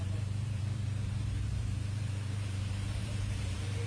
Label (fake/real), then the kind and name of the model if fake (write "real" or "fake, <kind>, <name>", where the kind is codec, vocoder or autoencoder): fake, vocoder, BigVGAN v2